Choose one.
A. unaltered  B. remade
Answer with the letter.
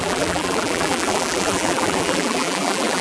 B